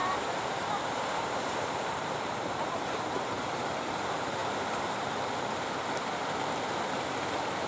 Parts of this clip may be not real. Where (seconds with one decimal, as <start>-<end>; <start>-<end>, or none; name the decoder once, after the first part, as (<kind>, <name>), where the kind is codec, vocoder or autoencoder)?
0.0-4.4 (vocoder, BigVGAN v2); 6.8-7.7